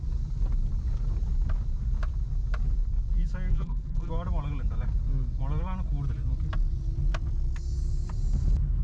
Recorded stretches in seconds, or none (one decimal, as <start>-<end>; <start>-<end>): 0.0-3.5; 4.1-8.8